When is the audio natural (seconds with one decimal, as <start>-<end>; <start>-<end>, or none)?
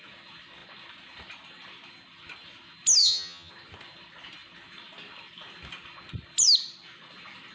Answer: 0.0-3.0; 3.5-7.5